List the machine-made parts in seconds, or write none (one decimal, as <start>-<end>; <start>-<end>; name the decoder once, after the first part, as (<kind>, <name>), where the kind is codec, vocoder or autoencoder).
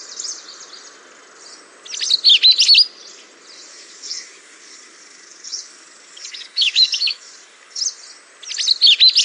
3.7-7.8 (codec, DAC)